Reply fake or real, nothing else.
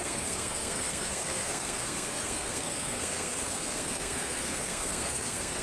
fake